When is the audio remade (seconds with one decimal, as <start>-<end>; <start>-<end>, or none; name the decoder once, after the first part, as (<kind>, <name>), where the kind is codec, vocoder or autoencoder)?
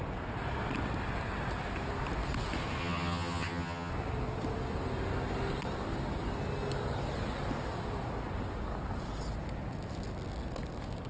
2.8-3.9 (vocoder, HiFi-GAN)